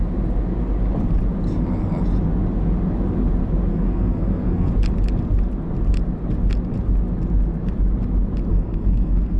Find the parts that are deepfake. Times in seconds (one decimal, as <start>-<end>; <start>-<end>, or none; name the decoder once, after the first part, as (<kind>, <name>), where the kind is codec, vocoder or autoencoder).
3.7-4.7 (codec, SNAC); 8.5-9.4